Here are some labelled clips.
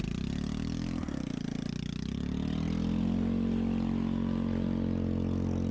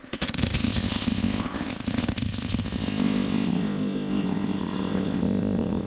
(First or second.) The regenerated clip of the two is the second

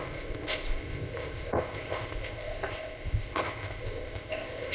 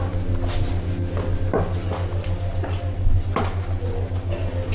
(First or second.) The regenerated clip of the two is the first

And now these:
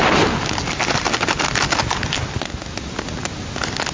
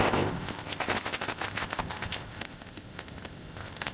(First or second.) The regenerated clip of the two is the second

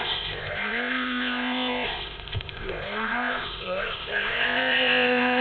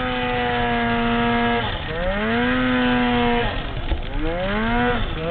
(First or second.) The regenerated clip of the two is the first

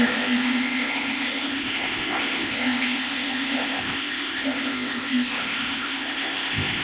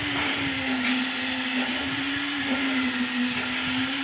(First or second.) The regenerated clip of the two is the first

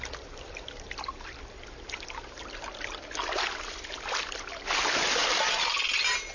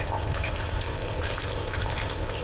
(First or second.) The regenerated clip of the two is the second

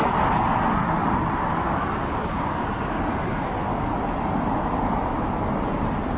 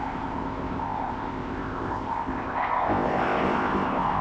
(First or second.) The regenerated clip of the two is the second